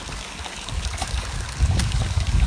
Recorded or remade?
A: remade